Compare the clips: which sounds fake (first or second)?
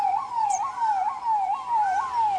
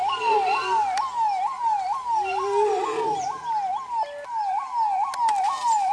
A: first